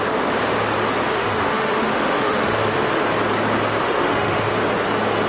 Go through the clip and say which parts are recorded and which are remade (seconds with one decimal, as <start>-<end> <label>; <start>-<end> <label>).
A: 0.0-1.2 recorded; 1.2-3.0 remade; 3.0-3.8 recorded; 3.8-4.5 remade; 4.5-5.3 recorded